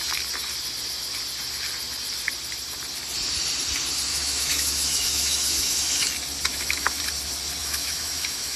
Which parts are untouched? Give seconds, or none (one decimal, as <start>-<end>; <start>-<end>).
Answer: 0.0-4.1; 6.1-6.5; 7.0-7.6